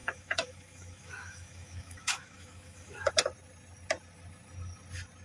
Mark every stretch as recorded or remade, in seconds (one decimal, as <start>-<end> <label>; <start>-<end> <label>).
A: 0.0-3.1 remade; 3.1-5.2 recorded